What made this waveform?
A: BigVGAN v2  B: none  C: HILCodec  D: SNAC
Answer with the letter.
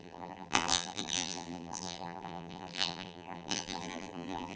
A